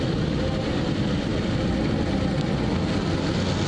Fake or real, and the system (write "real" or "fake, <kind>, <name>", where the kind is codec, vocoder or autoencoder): real